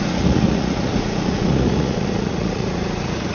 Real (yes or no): no